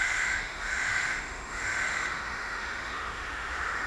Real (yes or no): no